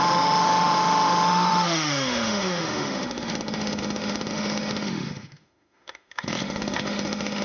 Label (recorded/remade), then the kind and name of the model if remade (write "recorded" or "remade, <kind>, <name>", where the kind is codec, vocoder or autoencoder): remade, autoencoder, DAC-VAE